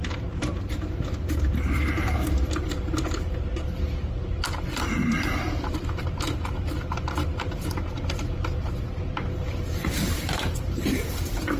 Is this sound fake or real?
fake